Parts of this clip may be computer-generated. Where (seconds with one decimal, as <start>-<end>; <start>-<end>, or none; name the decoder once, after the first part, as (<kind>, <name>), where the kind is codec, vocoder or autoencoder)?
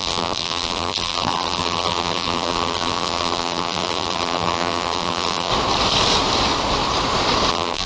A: 0.0-5.5 (vocoder, BigVGAN v2); 7.5-7.9